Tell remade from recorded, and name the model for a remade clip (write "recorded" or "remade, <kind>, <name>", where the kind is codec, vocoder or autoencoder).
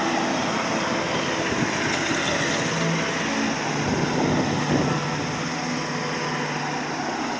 recorded